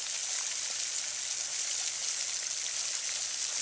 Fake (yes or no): no